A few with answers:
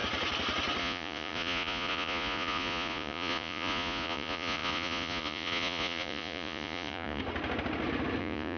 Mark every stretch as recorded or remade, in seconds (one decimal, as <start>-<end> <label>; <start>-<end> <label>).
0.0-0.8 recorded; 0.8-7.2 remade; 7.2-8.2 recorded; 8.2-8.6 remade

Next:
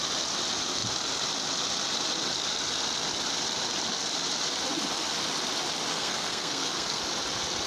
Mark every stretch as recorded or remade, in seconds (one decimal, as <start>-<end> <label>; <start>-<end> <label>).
0.0-5.9 recorded; 5.9-7.0 remade; 7.0-7.7 recorded

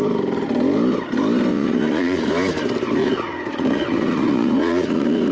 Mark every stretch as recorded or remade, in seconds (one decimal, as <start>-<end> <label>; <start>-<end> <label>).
0.0-1.5 recorded; 1.5-2.3 remade; 2.3-3.0 recorded; 3.0-5.3 remade

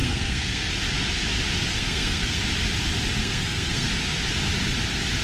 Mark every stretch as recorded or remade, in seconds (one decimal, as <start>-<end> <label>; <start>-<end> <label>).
0.0-0.7 remade; 0.7-1.7 recorded; 1.7-2.4 remade; 2.4-3.2 recorded; 3.2-3.9 remade; 3.9-5.2 recorded

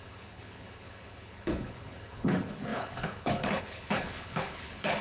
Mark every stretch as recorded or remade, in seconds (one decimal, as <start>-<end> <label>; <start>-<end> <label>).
0.0-5.0 remade